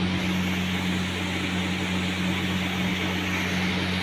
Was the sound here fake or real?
real